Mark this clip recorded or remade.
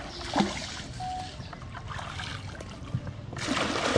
recorded